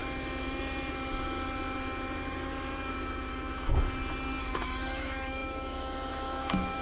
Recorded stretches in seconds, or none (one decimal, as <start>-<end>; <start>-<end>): 0.0-2.9; 3.7-4.4